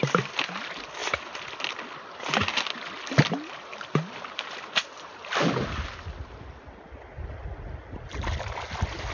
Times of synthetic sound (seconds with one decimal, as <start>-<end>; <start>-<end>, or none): none

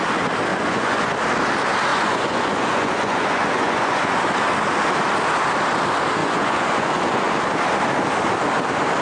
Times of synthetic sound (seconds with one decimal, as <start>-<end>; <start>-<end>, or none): 0.5-1.1; 1.9-4.2; 6.2-7.3

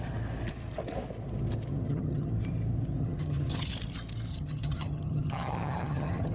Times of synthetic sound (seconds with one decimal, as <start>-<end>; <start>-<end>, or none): 1.7-2.3; 3.0-3.7; 4.3-6.3